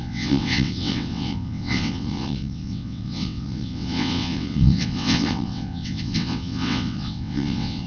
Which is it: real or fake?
fake